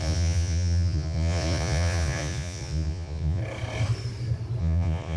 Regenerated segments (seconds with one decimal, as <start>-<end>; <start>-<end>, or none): 0.0-3.4; 4.6-5.2